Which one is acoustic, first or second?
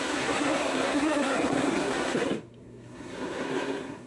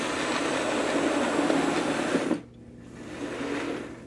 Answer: second